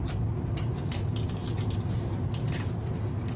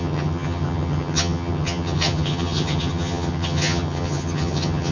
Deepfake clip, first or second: second